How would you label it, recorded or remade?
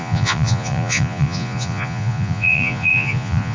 remade